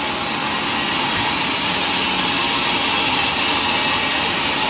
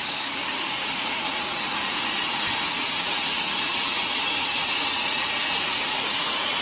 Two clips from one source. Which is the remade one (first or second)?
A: second